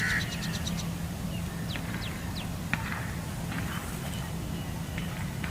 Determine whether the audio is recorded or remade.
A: recorded